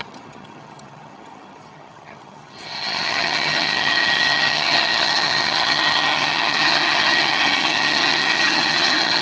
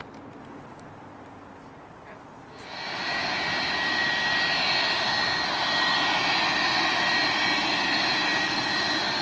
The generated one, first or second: first